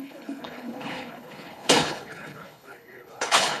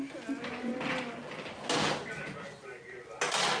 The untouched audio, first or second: second